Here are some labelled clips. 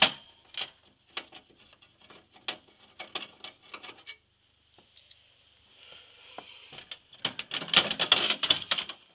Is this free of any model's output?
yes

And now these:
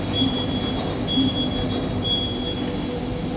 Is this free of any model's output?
yes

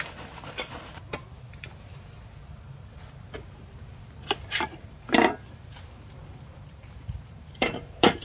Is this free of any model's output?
no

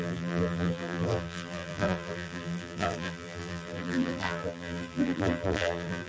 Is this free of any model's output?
no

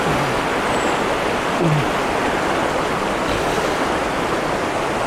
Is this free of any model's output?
yes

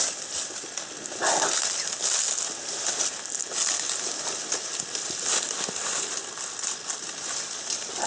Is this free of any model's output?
yes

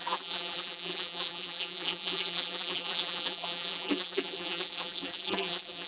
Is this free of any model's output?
no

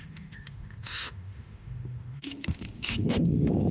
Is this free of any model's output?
no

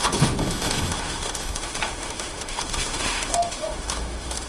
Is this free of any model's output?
no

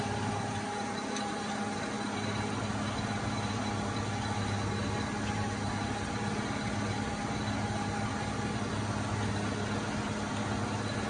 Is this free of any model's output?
yes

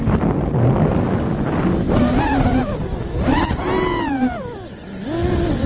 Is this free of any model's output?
yes